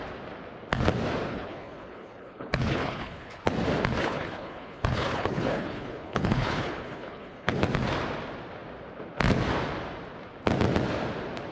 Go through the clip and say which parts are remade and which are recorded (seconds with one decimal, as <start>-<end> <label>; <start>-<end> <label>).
0.0-1.3 recorded; 1.3-3.4 remade; 3.4-4.0 recorded; 4.0-7.6 remade; 7.6-11.5 recorded